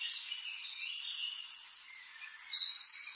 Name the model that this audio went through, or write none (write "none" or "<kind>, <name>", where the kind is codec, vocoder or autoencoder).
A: vocoder, Vocos